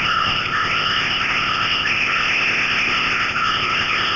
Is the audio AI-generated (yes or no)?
yes